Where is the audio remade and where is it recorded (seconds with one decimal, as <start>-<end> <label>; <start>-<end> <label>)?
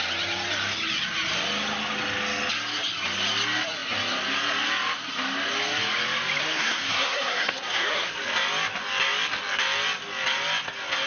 0.0-6.4 recorded; 6.4-8.1 remade; 8.1-11.1 recorded